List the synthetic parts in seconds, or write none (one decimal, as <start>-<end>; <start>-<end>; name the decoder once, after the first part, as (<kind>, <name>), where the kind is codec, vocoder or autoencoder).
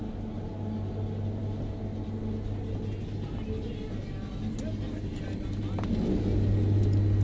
none